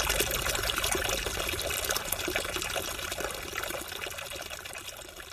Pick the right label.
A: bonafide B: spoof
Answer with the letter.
A